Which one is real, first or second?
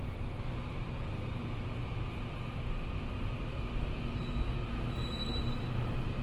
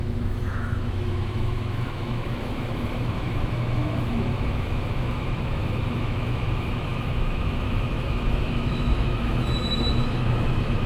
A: first